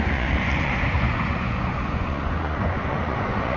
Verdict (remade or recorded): remade